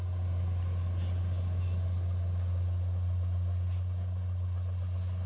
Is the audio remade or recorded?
recorded